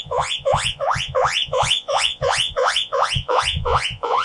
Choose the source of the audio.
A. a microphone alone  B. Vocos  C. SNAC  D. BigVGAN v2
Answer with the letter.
B